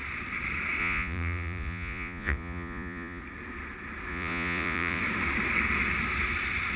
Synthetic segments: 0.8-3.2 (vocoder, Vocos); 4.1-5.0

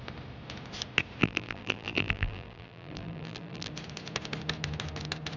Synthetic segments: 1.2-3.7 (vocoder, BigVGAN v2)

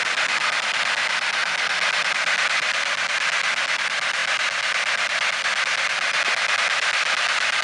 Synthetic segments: none

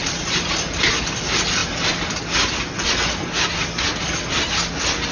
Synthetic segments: 0.0-0.8 (vocoder, BigVGAN v2)